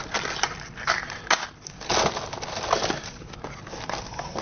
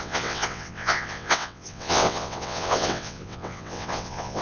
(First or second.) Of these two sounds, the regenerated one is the second